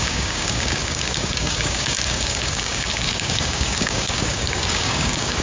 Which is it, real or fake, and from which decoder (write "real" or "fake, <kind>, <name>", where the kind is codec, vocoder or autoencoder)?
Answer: fake, codec, DAC